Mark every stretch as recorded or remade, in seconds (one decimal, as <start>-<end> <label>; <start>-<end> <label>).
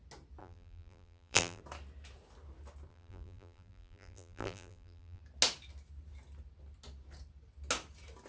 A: 0.0-0.4 recorded; 0.4-1.6 remade; 1.6-2.9 recorded; 2.9-5.2 remade; 5.2-8.3 recorded